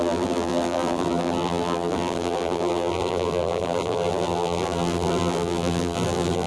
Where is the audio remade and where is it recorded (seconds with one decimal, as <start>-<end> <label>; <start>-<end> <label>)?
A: 0.0-6.5 remade